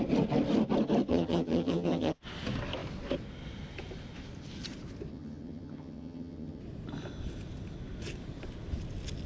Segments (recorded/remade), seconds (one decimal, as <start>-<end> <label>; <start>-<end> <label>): 0.0-1.1 recorded; 1.1-2.2 remade; 2.2-5.1 recorded; 5.1-6.6 remade; 6.6-9.3 recorded